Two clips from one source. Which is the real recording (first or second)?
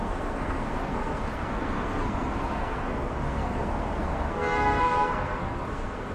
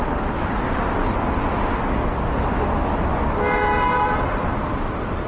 second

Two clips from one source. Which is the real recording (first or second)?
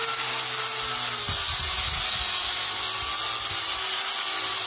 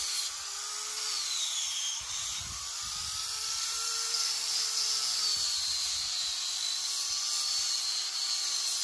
first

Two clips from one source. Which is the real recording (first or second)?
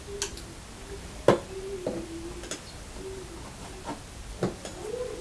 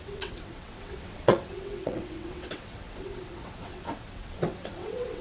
first